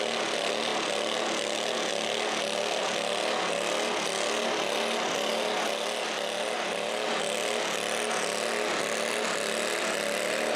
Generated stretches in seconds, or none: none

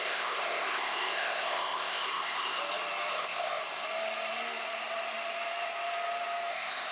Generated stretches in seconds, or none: 0.0-2.6 (codec, ZipCodec); 3.1-3.6; 6.5-6.9

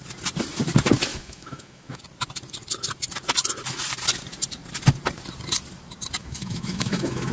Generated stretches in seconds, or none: 1.1-2.0 (autoencoder, DAC-VAE); 6.2-7.3

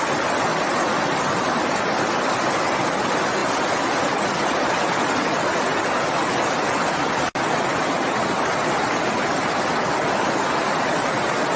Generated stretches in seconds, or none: none

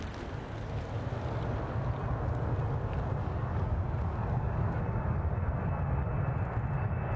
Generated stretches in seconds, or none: 3.2-4.8 (codec, DAC)